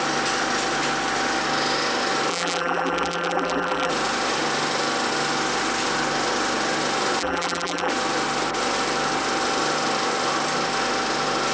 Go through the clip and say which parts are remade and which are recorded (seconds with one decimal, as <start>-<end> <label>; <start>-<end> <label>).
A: 0.0-2.3 recorded; 2.3-3.9 remade; 3.9-7.2 recorded; 7.2-7.9 remade; 7.9-11.5 recorded